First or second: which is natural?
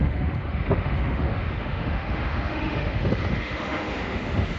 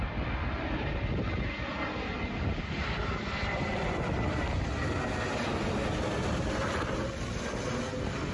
second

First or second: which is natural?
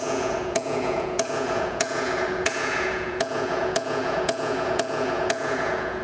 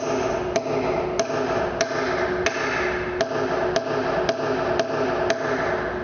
second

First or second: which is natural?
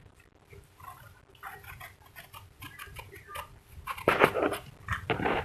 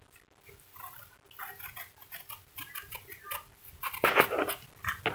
second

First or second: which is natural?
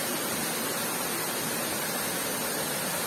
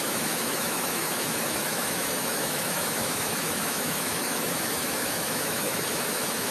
first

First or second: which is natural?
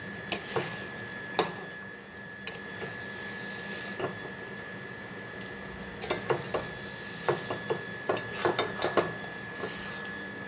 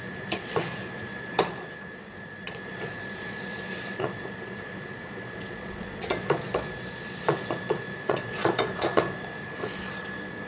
first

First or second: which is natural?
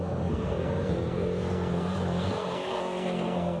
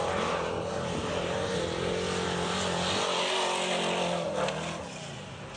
second